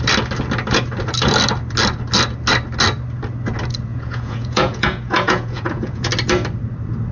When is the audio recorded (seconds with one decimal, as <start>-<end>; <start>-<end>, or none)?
0.0-3.9; 6.1-7.1